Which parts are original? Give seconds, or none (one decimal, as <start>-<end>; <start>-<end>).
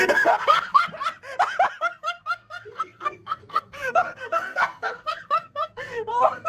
0.8-1.8